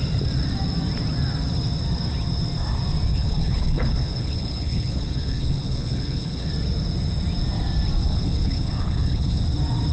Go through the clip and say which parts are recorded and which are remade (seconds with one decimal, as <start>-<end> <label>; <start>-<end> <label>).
0.0-3.1 recorded; 3.1-6.5 remade; 6.5-8.0 recorded; 8.0-9.4 remade; 9.4-9.9 recorded